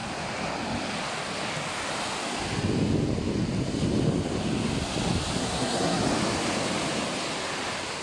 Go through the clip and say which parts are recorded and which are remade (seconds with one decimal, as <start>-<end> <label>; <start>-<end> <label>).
0.0-5.4 recorded; 5.4-6.0 remade; 6.0-8.0 recorded